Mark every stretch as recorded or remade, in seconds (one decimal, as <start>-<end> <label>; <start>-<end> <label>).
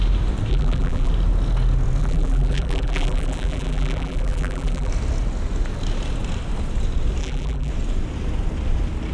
0.0-0.5 recorded; 0.5-1.1 remade; 1.1-2.0 recorded; 2.0-4.9 remade; 4.9-7.2 recorded; 7.2-7.7 remade; 7.7-9.1 recorded